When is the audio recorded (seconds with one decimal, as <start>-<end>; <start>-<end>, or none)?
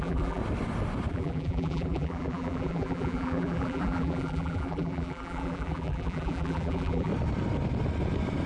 0.4-1.1; 7.1-8.5